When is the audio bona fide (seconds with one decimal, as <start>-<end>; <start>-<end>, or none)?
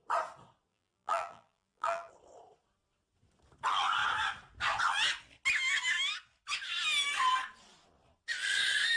0.0-0.7; 2.1-9.0